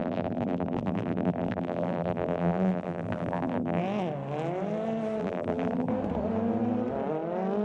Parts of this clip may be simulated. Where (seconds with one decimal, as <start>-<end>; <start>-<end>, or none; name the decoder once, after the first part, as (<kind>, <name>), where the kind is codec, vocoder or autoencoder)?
0.0-3.8 (vocoder, BigVGAN v2); 5.2-5.9